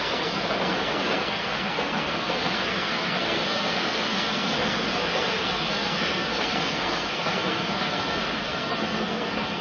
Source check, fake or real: fake